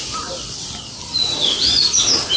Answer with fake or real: real